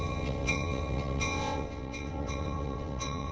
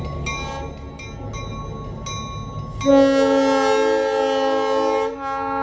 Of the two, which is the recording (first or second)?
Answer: second